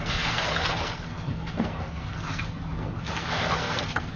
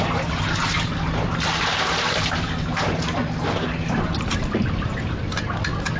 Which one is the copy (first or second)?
first